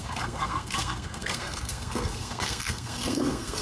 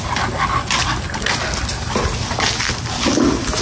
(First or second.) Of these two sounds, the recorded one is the second